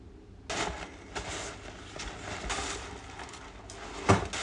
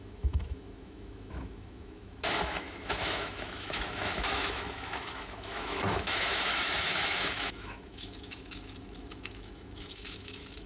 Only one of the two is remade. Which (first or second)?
second